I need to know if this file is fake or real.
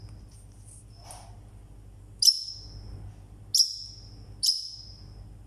real